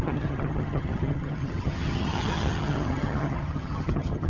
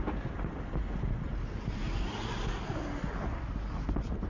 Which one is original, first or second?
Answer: second